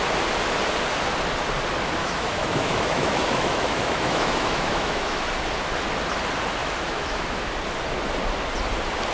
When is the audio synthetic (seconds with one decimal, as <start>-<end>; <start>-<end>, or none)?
2.0-5.3; 6.6-7.5